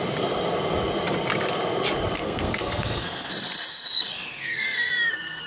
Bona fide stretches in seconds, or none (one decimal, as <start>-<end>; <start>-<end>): 0.0-2.2; 3.3-4.1; 4.9-5.5